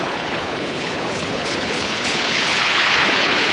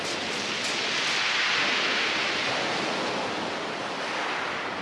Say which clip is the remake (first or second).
first